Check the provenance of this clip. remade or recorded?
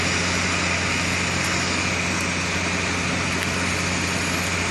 recorded